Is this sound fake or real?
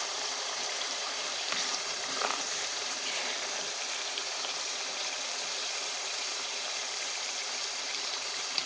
fake